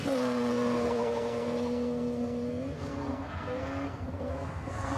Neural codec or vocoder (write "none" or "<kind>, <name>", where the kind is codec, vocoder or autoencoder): codec, SNAC